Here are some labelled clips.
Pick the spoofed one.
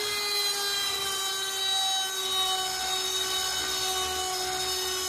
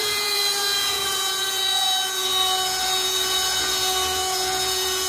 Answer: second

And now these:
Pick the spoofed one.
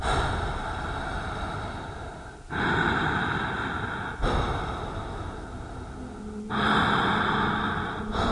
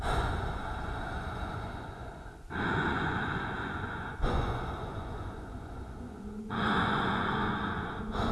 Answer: second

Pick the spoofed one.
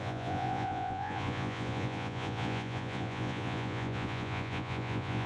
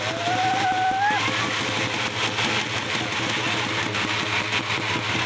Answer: first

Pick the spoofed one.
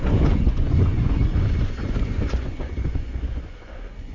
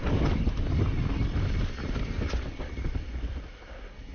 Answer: first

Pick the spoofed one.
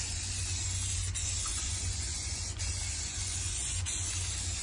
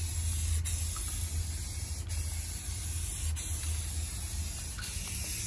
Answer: first